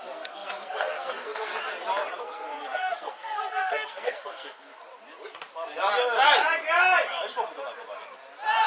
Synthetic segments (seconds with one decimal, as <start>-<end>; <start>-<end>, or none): 0.0-1.5; 2.2-4.7